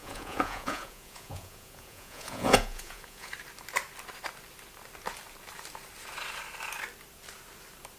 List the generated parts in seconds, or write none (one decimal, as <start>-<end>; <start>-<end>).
0.0-3.3